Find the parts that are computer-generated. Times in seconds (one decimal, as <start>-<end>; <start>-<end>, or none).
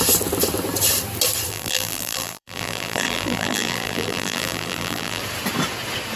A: 1.5-5.2